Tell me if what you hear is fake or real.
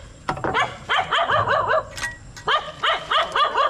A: real